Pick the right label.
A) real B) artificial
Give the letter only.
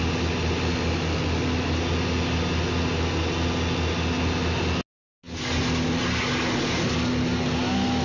A